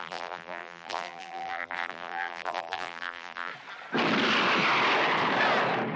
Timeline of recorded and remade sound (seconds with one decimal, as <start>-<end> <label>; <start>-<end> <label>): 0.0-3.5 remade; 3.5-6.0 recorded